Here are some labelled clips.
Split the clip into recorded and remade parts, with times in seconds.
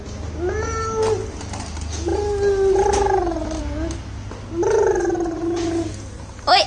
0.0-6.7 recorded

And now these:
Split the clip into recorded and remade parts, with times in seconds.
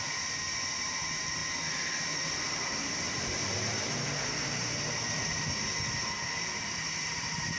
0.0-1.4 remade; 1.4-3.0 recorded; 3.0-7.6 remade